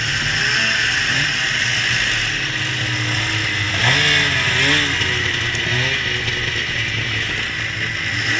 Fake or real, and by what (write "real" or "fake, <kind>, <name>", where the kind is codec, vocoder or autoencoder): real